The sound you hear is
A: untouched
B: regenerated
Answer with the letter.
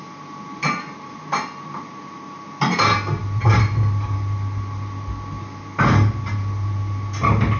A